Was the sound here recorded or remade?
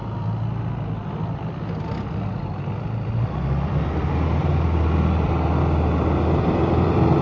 remade